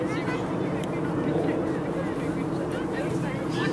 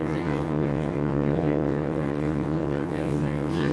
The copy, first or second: second